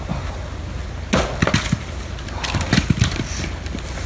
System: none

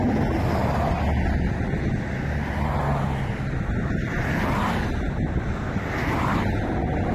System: none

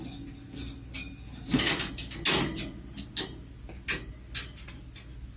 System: none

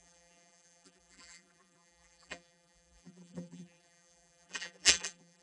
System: vocoder, BigVGAN v2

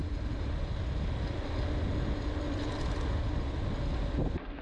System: none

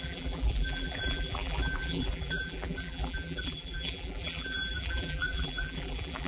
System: vocoder, BigVGAN v2